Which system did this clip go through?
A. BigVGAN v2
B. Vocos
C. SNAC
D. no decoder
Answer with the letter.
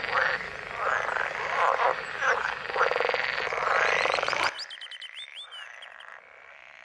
D